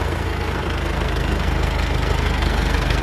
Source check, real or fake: fake